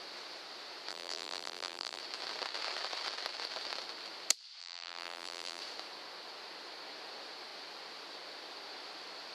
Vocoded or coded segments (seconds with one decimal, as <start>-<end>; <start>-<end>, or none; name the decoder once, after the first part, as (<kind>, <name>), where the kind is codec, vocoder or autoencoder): 0.9-2.0 (vocoder, BigVGAN v2); 4.6-5.6